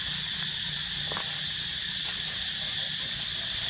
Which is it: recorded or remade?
remade